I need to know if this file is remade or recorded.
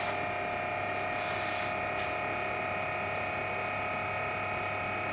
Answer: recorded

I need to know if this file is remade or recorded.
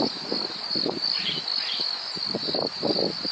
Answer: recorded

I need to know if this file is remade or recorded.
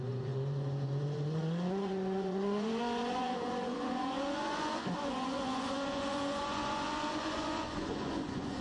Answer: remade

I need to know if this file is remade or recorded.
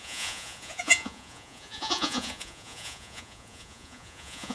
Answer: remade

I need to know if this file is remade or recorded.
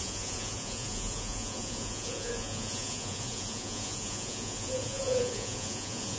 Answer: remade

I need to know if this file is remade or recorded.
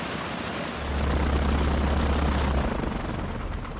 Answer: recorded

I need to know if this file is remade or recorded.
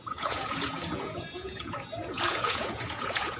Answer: remade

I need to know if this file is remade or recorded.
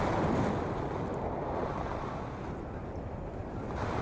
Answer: recorded